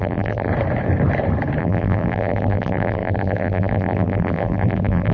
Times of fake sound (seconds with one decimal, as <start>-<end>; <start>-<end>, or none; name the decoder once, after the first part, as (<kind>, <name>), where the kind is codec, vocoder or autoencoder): 0.0-0.5 (vocoder, BigVGAN v2); 1.6-5.1